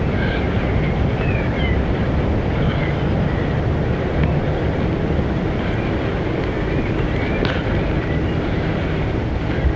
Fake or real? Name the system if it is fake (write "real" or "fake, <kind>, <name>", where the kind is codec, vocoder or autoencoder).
real